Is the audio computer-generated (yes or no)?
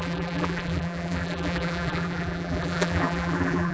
yes